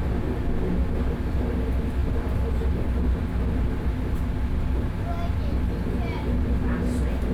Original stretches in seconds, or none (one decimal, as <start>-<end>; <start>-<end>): 0.0-7.3